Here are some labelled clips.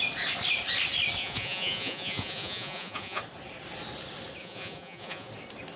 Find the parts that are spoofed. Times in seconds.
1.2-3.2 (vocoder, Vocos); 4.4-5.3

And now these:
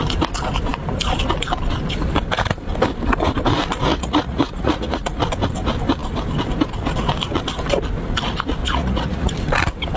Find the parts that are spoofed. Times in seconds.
3.9-5.2 (vocoder, Vocos); 8.6-9.3